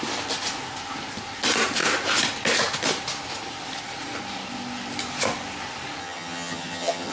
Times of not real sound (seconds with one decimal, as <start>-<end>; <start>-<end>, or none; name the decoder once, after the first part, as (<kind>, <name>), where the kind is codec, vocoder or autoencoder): 6.0-7.1 (vocoder, HiFi-GAN)